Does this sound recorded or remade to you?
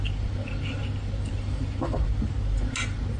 recorded